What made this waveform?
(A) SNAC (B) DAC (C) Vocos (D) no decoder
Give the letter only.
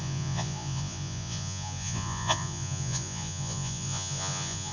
C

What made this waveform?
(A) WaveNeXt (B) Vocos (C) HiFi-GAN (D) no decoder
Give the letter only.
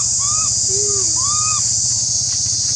D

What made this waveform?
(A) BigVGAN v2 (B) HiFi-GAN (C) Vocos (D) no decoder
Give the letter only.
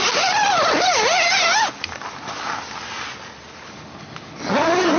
D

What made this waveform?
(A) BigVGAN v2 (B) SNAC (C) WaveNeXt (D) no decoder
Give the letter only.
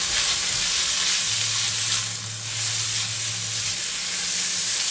D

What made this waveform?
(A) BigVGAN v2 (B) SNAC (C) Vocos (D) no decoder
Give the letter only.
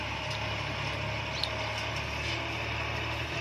D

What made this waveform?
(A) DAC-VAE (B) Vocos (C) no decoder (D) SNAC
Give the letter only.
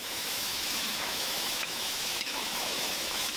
A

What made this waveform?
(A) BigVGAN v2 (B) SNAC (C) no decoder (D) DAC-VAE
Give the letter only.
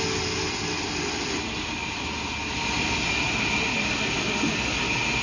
C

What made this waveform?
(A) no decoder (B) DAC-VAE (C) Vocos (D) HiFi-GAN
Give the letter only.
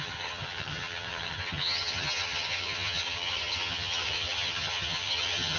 D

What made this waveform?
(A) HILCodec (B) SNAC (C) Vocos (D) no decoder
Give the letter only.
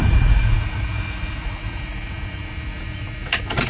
C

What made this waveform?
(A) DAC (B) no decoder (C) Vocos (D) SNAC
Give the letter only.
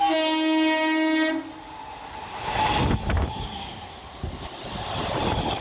B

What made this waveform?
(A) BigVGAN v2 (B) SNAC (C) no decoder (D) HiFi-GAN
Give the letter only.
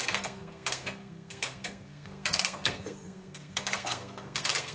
B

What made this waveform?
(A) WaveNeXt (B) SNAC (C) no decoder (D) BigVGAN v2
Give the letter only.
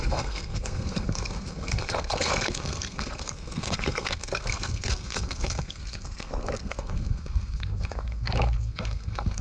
B